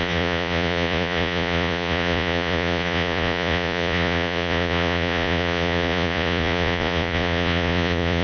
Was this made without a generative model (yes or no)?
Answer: no